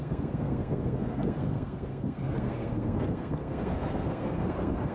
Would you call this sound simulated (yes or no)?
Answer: yes